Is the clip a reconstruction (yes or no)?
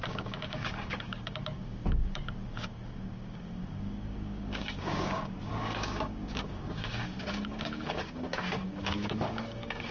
yes